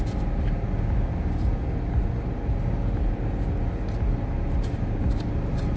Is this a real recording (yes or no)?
yes